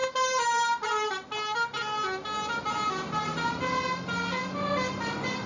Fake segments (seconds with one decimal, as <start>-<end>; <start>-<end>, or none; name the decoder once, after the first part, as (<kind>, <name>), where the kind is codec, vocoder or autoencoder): none